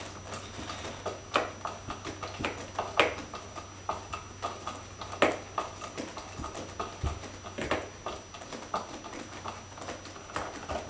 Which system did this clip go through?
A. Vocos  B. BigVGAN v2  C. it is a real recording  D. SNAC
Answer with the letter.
C